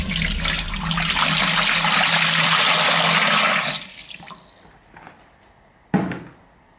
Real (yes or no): yes